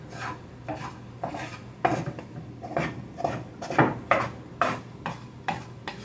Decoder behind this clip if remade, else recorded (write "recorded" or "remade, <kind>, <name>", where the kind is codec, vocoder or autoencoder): recorded